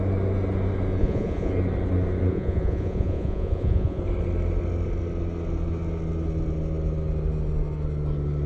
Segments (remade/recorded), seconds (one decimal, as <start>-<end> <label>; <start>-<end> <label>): 0.0-1.0 recorded; 1.0-1.5 remade; 1.5-2.3 recorded; 2.3-4.0 remade; 4.0-8.5 recorded

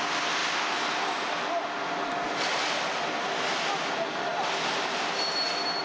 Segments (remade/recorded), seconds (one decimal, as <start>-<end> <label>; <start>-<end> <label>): 0.0-0.4 recorded; 0.4-3.9 remade; 3.9-5.8 recorded

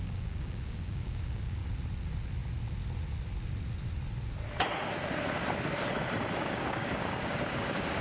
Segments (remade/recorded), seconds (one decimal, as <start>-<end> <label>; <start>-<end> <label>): 0.0-1.6 remade; 1.6-6.4 recorded; 6.4-8.0 remade

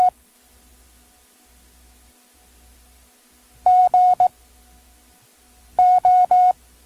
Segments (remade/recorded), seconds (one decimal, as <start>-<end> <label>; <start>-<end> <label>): 0.0-6.9 recorded

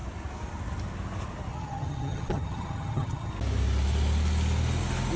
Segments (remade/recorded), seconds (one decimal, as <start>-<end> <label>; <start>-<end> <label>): 0.0-1.5 recorded; 1.5-3.3 remade; 3.3-5.2 recorded

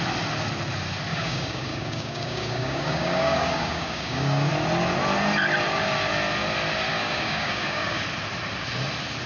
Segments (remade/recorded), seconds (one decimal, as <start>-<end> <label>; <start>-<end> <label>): 0.0-1.1 recorded; 1.1-4.5 remade; 4.5-6.9 recorded; 6.9-8.0 remade; 8.0-9.3 recorded